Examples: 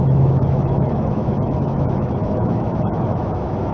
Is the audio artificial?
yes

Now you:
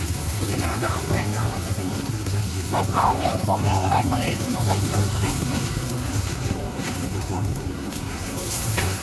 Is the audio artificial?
yes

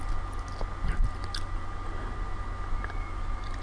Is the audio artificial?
no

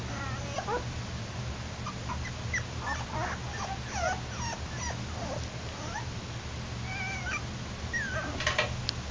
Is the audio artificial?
no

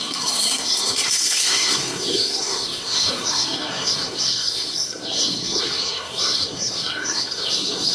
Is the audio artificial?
yes